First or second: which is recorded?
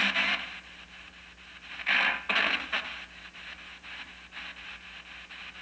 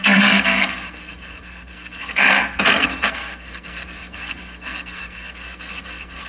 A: first